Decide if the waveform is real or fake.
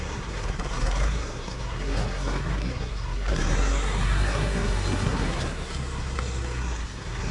fake